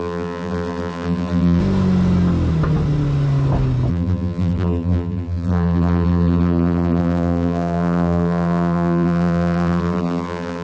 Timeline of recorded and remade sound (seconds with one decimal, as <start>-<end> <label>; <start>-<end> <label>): 0.0-1.6 remade; 1.6-3.9 recorded; 3.9-10.6 remade